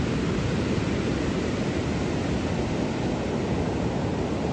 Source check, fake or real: real